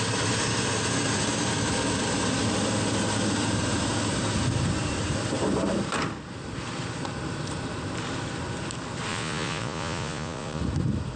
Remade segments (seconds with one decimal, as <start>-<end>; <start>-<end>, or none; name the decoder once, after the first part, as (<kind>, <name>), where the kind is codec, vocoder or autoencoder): 9.1-10.6 (vocoder, Vocos)